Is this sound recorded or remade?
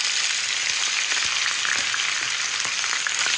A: recorded